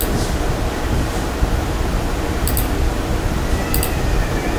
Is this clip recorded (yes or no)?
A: yes